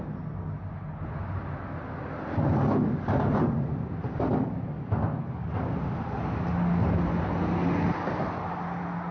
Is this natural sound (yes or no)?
yes